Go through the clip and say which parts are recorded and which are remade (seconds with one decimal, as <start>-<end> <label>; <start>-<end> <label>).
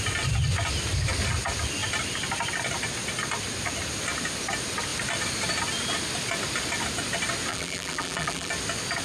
0.0-7.5 recorded; 7.5-8.5 remade; 8.5-9.0 recorded